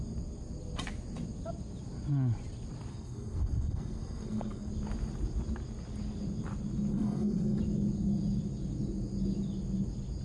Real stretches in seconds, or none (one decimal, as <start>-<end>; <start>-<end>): 0.0-2.9; 4.7-6.9; 7.6-10.2